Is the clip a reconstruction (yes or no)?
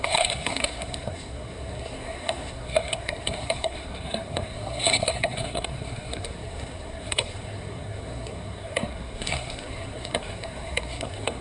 yes